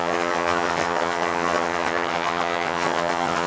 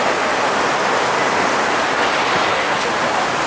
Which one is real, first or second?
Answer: second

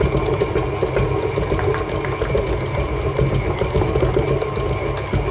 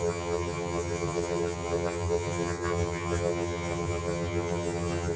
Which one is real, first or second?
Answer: first